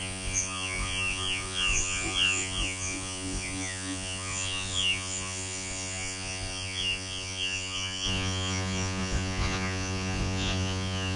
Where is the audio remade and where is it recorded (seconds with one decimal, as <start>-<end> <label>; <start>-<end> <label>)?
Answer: 0.0-11.2 remade